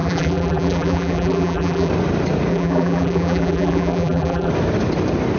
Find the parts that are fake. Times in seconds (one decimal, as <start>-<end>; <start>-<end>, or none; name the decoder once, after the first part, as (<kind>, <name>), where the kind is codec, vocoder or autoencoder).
0.0-1.9 (vocoder, BigVGAN v2); 2.5-4.5